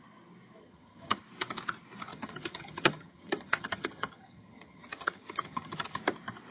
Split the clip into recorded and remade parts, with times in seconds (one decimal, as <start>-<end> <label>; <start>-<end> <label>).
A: 0.0-0.6 recorded; 0.6-1.2 remade; 1.2-2.1 recorded; 2.1-6.0 remade; 6.0-6.5 recorded